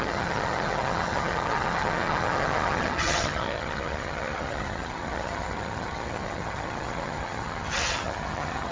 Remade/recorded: remade